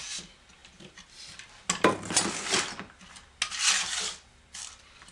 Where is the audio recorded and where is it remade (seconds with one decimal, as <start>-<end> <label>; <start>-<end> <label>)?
0.0-5.1 recorded